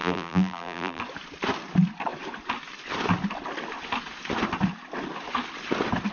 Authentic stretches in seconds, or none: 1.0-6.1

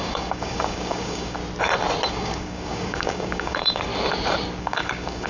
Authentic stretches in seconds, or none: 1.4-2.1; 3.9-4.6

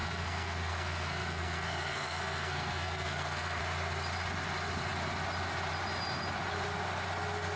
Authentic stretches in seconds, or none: 3.6-7.6

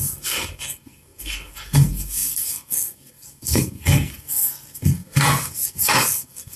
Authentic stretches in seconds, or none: none